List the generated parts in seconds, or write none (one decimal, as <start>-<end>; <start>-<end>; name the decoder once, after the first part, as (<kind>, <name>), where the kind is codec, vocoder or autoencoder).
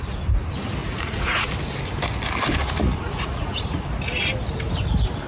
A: 0.8-1.5 (vocoder, Vocos); 2.6-3.6